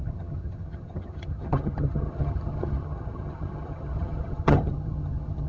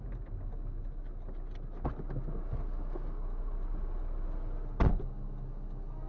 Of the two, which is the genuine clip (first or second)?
second